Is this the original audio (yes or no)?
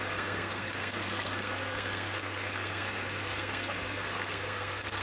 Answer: no